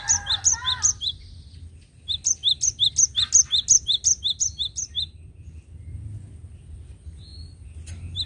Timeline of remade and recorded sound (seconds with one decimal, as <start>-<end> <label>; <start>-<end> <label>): 0.0-8.3 recorded